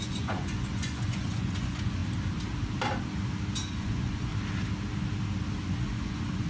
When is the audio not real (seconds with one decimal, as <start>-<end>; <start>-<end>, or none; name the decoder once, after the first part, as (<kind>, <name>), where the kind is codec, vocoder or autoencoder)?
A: 0.0-2.0 (vocoder, Vocos); 3.7-4.3; 5.6-6.5